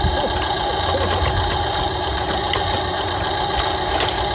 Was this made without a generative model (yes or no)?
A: yes